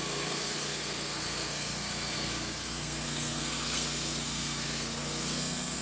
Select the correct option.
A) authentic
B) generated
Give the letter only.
B